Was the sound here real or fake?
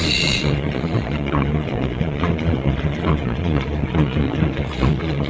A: fake